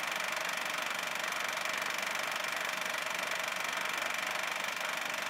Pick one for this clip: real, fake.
real